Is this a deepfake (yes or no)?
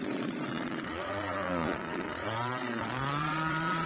yes